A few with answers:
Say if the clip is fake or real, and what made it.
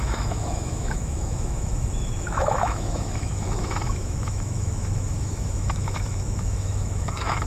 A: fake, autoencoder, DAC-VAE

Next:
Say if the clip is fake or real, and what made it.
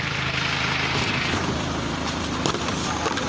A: fake, vocoder, BigVGAN v2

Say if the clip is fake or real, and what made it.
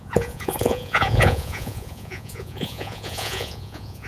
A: fake, vocoder, Vocos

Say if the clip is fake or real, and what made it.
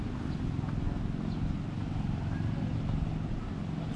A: real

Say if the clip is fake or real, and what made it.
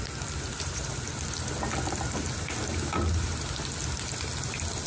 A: real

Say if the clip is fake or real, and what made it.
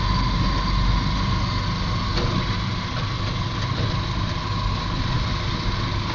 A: real